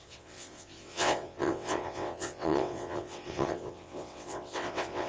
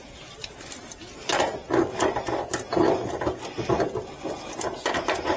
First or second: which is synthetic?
first